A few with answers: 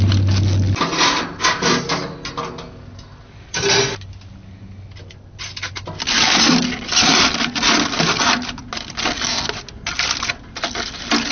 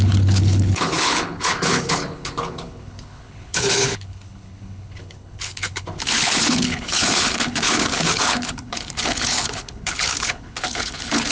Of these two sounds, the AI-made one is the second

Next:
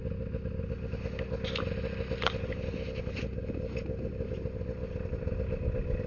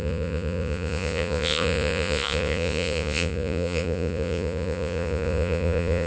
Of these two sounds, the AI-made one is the second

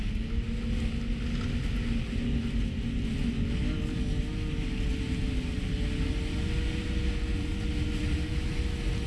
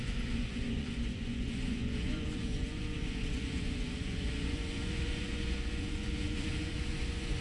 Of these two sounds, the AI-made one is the second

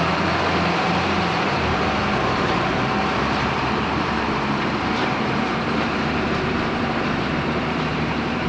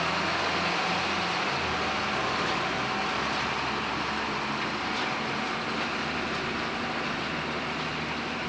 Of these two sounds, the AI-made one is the first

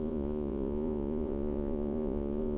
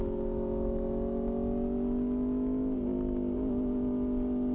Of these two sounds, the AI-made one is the first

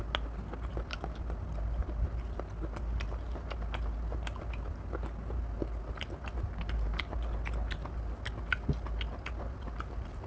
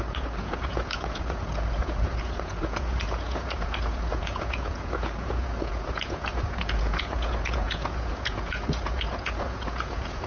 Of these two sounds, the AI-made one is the second